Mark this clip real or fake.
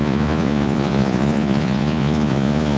fake